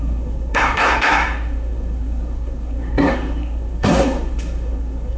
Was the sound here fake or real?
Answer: fake